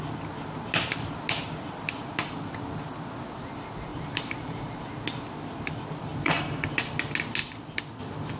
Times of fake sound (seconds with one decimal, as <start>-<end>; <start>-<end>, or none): 3.9-4.7; 6.1-6.6